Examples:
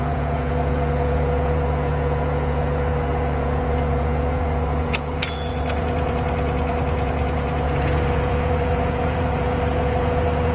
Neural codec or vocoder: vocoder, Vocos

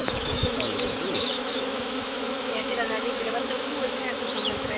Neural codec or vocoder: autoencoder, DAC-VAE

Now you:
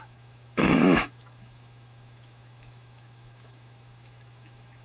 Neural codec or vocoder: autoencoder, DAC-VAE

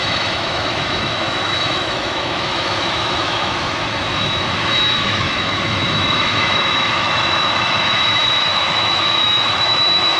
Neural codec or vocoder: autoencoder, DAC-VAE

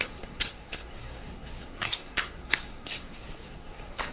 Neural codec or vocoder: codec, SNAC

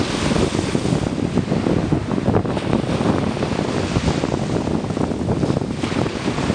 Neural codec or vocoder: none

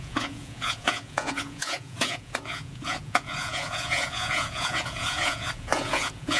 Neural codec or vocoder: vocoder, Vocos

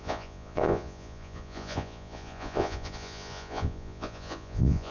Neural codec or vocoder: vocoder, Vocos